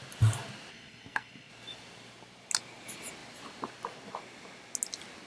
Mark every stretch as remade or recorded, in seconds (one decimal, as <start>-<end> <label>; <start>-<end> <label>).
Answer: 0.0-0.7 recorded; 0.7-1.5 remade; 1.5-5.3 recorded